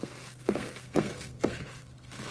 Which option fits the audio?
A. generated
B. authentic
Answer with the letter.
A